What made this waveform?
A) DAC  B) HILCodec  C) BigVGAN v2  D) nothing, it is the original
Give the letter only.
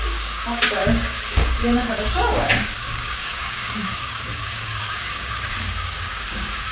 A